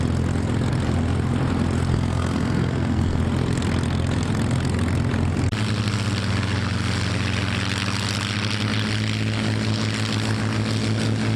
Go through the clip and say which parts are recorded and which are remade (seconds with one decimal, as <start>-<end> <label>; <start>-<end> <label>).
0.0-1.9 recorded; 1.9-3.2 remade; 3.2-11.4 recorded